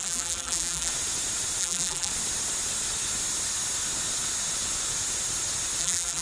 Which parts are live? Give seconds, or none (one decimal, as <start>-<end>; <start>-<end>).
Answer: 0.9-1.6; 2.1-5.8